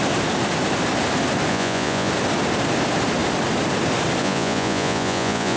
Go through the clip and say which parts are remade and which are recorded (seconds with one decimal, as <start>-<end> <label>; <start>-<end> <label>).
0.0-1.5 recorded; 1.5-2.1 remade; 2.1-4.2 recorded; 4.2-5.6 remade

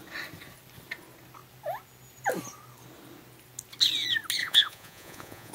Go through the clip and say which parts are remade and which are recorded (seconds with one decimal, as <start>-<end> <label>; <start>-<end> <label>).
0.0-4.4 recorded; 4.4-5.5 remade

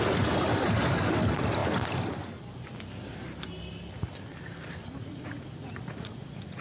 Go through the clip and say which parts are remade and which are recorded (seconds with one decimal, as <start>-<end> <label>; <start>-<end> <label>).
0.0-5.0 recorded; 5.0-6.6 remade

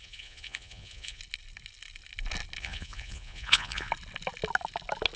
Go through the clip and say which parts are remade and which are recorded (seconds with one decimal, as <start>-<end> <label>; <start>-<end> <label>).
0.0-1.2 remade; 1.2-2.6 recorded; 2.6-3.9 remade; 3.9-5.2 recorded